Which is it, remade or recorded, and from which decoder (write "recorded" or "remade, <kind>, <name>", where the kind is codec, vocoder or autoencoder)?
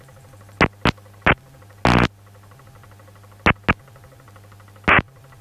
recorded